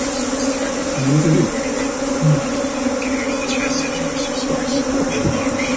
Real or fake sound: real